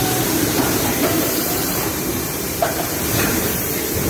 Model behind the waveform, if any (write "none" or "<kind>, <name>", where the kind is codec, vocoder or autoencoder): vocoder, BigVGAN v2